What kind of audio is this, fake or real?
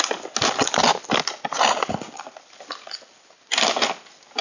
real